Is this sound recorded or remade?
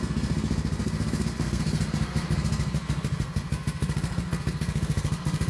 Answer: remade